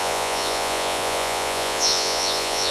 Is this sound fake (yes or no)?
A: yes